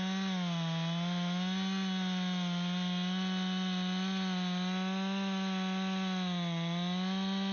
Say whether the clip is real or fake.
real